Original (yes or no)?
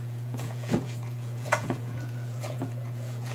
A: no